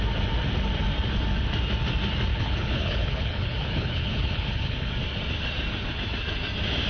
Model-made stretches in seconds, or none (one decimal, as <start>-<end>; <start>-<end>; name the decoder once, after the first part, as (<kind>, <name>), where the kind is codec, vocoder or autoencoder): 2.3-4.9 (codec, HILCodec)